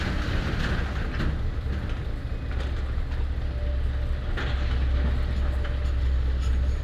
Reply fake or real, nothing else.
real